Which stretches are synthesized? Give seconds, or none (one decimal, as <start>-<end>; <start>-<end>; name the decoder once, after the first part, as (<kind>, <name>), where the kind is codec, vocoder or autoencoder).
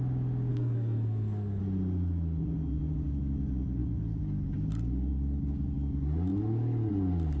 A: 0.5-1.6 (codec, SNAC)